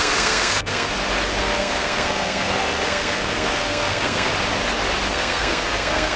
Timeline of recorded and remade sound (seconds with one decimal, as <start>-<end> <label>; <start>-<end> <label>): 0.0-0.9 remade; 0.9-1.4 recorded; 1.4-4.3 remade; 4.3-5.1 recorded; 5.1-6.2 remade